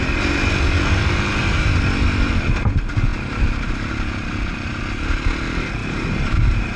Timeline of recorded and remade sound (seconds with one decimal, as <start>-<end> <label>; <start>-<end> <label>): 0.0-5.8 recorded; 5.8-6.8 remade